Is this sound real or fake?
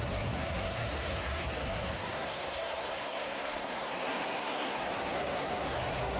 fake